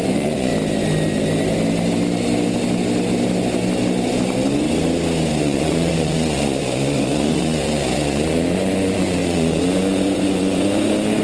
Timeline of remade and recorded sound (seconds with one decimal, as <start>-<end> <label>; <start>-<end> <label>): 0.0-0.5 remade; 0.5-5.4 recorded; 5.4-11.2 remade